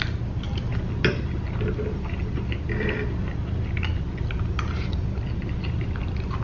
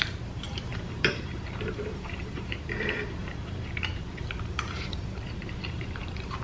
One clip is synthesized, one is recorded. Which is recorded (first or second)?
first